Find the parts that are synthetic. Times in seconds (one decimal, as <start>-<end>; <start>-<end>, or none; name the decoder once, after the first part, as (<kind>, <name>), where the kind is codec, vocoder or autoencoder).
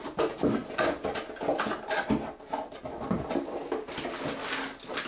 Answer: none